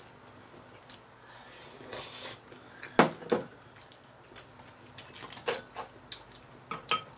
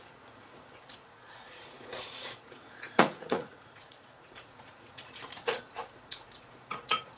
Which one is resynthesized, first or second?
second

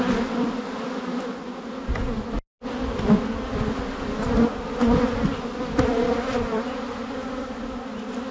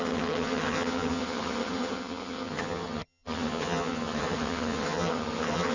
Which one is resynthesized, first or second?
second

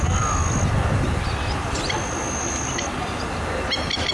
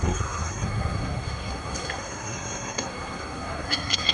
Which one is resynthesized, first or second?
second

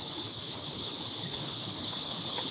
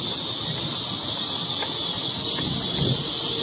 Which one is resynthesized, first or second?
first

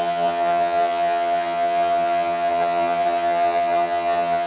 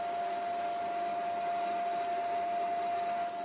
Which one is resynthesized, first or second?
first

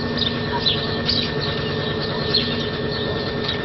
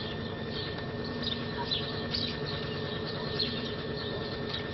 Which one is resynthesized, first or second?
second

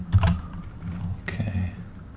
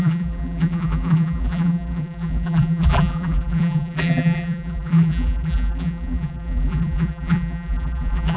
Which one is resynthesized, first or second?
second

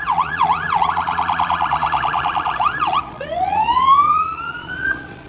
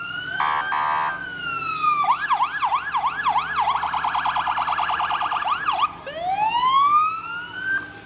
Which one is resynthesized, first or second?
first